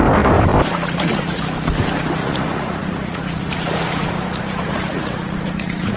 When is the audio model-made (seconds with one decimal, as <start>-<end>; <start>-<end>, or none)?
0.7-1.4; 2.2-6.0